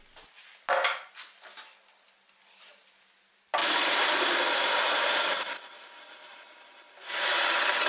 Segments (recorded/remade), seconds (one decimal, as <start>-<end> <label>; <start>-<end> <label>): 0.0-3.6 recorded; 3.6-7.4 remade; 7.4-7.9 recorded